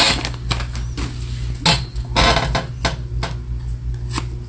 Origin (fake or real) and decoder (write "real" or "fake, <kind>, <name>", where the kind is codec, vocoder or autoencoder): real